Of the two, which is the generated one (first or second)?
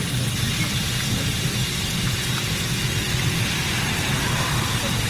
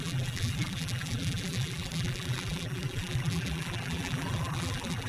second